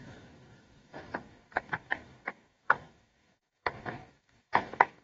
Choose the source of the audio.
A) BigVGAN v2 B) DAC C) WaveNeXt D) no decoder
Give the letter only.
B